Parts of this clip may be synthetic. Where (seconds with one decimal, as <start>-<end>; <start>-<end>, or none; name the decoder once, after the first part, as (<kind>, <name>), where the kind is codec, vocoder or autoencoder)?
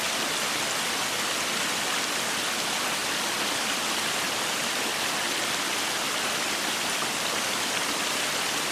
3.0-3.8 (vocoder, BigVGAN v2)